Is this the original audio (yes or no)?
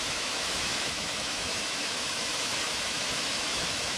no